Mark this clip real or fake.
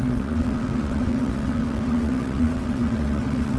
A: fake